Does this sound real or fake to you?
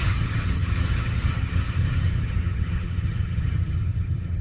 fake